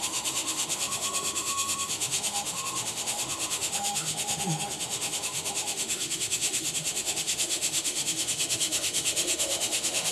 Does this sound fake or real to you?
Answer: fake